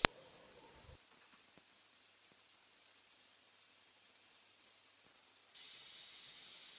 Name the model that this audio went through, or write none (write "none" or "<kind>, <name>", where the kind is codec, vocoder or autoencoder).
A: none